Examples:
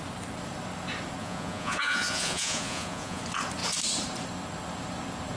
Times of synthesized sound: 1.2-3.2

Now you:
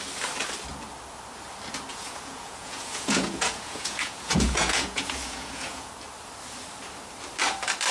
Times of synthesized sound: 1.9-5.9

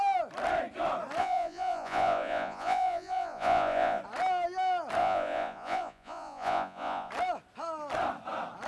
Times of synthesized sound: 1.2-4.0; 5.0-7.1

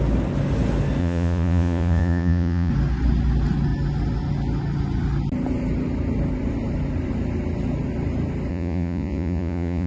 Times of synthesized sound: 1.0-2.7; 8.5-9.9